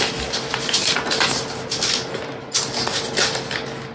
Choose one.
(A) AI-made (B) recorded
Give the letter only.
B